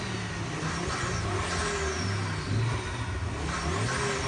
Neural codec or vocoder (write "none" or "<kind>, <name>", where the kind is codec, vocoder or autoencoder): none